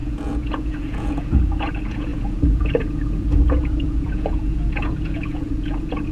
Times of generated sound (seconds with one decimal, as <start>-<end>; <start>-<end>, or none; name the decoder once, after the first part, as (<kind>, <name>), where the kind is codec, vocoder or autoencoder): 0.0-6.1 (vocoder, Vocos)